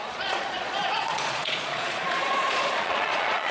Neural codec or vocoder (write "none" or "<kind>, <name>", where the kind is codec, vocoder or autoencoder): vocoder, Vocos